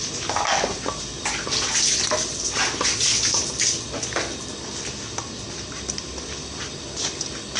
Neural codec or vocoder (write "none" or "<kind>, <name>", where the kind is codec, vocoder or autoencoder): none